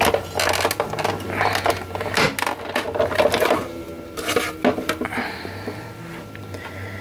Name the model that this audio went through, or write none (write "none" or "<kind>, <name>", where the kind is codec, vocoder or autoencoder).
none